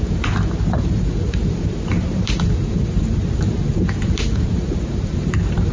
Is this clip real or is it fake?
fake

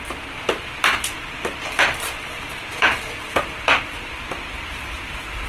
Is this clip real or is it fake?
fake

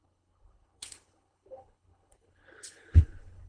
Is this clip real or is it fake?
fake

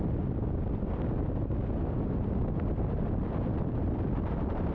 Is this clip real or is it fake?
real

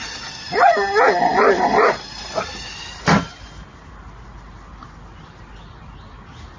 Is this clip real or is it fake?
real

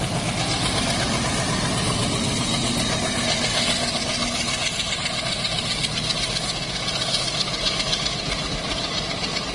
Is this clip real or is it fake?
real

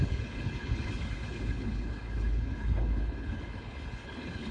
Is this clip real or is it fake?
fake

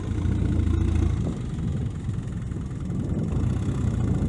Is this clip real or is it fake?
real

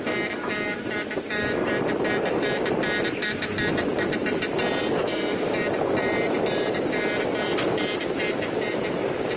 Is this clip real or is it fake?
real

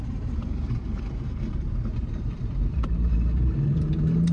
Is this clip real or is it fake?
fake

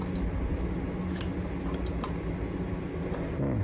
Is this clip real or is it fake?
real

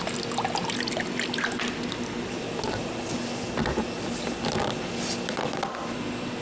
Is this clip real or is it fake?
real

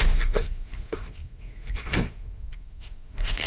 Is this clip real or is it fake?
fake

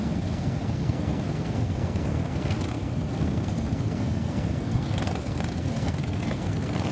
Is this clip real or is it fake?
fake